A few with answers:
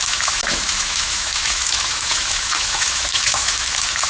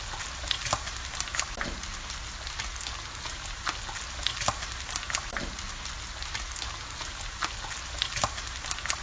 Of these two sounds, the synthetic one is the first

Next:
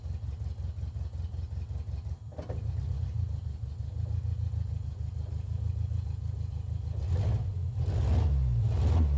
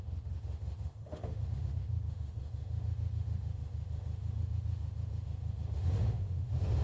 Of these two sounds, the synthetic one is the second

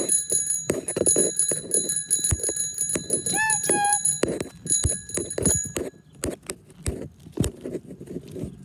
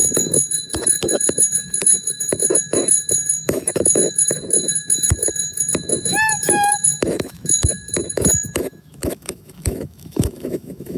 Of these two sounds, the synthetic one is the second